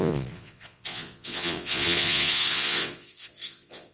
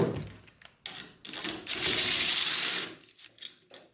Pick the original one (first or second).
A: second